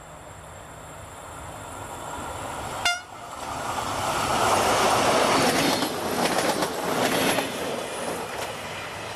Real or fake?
real